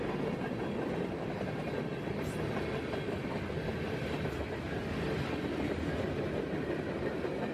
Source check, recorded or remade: recorded